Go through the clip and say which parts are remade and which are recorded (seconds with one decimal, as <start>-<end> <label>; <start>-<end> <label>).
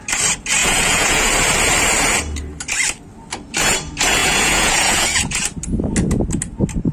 0.0-0.6 recorded; 0.6-1.3 remade; 1.3-4.2 recorded; 4.2-5.4 remade; 5.4-6.9 recorded